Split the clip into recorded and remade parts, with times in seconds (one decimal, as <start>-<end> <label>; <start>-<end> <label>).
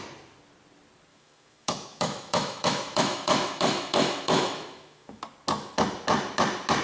0.0-1.1 recorded; 1.1-5.2 remade; 5.2-6.8 recorded